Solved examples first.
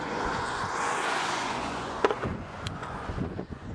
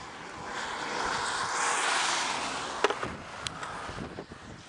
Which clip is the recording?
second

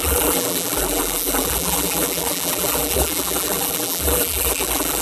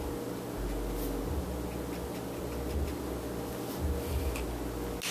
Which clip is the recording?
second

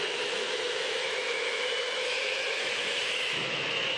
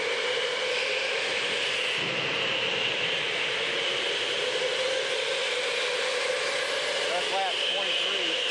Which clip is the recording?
second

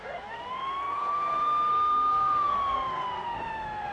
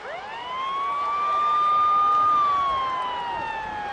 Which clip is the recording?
second